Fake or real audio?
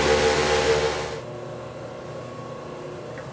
real